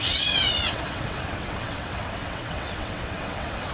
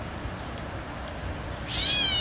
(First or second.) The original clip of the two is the second